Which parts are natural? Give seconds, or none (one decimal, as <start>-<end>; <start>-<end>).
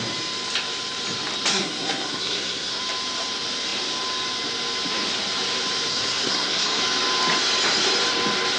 0.0-1.5; 2.8-5.9; 6.8-8.6